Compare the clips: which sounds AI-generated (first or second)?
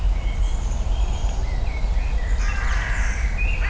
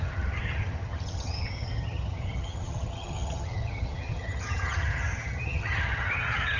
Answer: second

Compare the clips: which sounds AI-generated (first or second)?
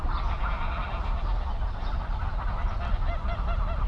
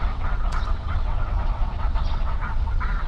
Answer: second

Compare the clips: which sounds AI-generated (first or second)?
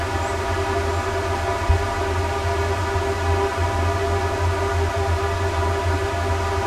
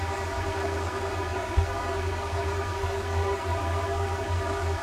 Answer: second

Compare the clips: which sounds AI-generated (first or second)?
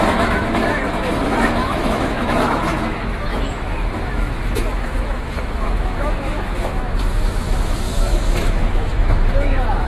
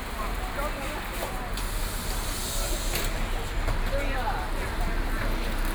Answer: first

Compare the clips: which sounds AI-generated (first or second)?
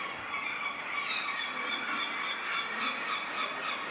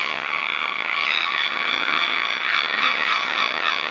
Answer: second